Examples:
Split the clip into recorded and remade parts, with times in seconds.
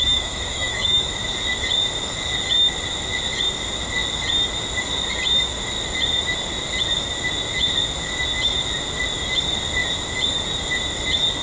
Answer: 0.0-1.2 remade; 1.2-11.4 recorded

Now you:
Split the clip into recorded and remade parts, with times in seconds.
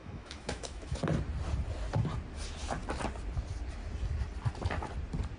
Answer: 0.0-1.0 remade; 1.0-5.4 recorded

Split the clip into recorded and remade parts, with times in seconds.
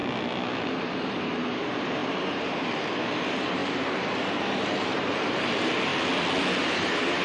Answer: 0.0-0.7 recorded; 0.7-5.9 remade; 5.9-6.6 recorded; 6.6-7.2 remade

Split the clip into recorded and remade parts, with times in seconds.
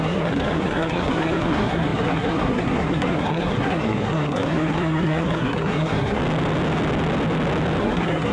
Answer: 0.0-6.2 remade; 6.2-7.8 recorded; 7.8-8.3 remade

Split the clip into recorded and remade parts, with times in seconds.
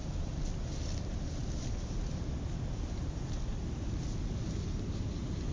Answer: 0.0-5.5 recorded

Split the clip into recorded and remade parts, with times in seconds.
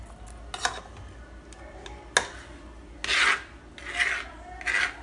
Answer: 0.0-5.0 recorded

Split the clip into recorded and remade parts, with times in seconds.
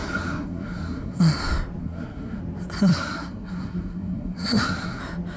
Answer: 0.0-1.2 remade; 1.2-1.8 recorded; 1.8-2.4 remade; 2.4-2.9 recorded; 2.9-5.0 remade; 5.0-5.4 recorded